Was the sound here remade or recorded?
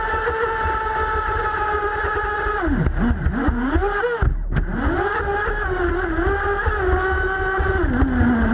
recorded